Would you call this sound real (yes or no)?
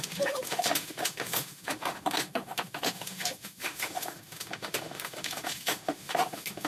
no